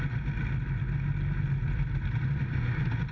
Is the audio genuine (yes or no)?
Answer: yes